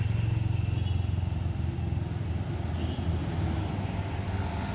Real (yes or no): yes